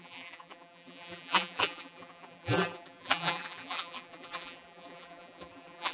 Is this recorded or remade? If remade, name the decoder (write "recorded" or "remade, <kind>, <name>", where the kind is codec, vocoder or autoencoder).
remade, vocoder, BigVGAN v2